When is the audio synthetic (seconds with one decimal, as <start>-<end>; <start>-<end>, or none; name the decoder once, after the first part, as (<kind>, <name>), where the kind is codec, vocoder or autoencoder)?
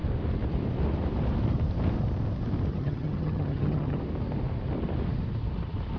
2.7-4.0 (vocoder, HiFi-GAN)